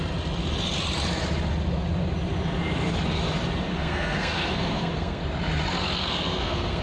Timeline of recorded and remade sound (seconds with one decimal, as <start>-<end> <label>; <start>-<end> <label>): 0.0-3.7 recorded; 3.7-5.2 remade; 5.2-6.0 recorded; 6.0-6.8 remade